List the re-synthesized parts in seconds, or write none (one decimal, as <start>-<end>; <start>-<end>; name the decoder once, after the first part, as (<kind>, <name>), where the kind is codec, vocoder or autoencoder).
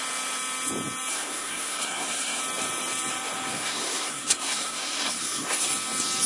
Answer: 1.1-2.4 (codec, SNAC); 3.5-5.7